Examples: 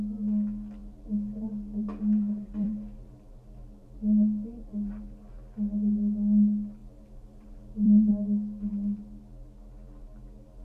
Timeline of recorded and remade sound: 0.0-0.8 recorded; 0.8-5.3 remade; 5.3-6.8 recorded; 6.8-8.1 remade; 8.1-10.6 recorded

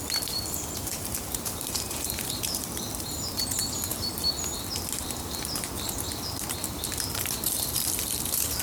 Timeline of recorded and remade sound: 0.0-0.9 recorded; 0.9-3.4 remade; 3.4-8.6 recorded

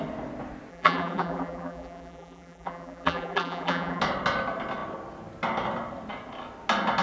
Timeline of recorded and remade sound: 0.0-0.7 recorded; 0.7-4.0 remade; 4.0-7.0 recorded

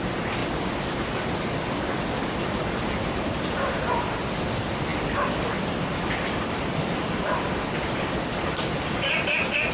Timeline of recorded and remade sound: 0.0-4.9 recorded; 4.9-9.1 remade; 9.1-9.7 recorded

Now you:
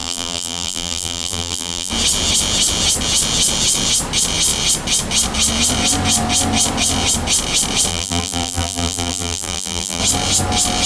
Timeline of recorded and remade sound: 0.0-1.9 remade; 1.9-7.9 recorded; 7.9-10.0 remade; 10.0-10.9 recorded

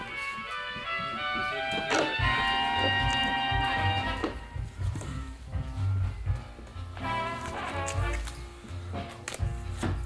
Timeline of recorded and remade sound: 0.0-4.2 recorded; 4.2-6.3 remade; 6.3-10.1 recorded

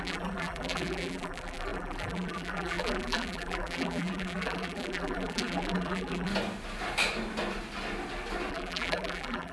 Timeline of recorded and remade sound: 0.0-6.3 remade; 6.3-8.5 recorded; 8.5-9.5 remade